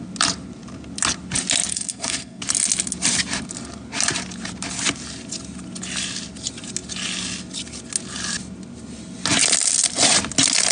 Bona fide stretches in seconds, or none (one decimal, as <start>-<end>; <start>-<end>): 0.0-1.7; 2.4-10.7